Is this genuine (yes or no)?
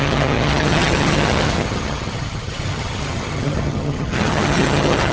no